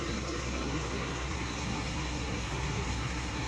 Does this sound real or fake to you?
fake